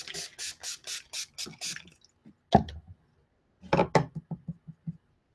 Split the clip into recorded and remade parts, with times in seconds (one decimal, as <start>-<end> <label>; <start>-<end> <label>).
0.0-5.3 recorded